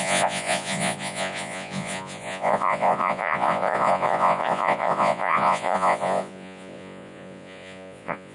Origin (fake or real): fake